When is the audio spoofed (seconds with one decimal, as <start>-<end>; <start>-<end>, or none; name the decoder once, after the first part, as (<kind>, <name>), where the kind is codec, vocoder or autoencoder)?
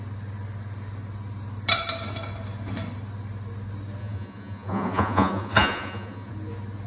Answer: 4.0-6.3 (vocoder, Vocos)